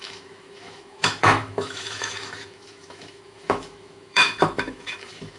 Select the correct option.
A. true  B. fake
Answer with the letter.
B